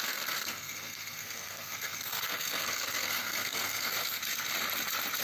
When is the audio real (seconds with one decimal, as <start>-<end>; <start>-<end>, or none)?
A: 4.2-5.2